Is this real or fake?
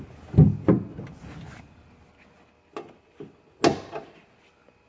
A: real